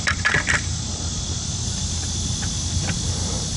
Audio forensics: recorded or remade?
recorded